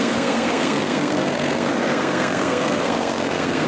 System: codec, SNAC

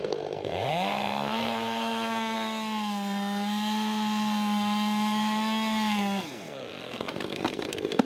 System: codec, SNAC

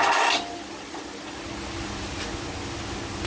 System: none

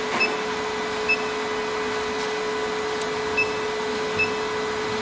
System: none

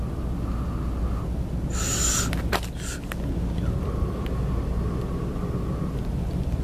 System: none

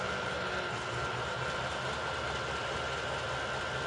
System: none